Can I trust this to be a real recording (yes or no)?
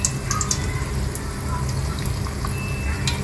yes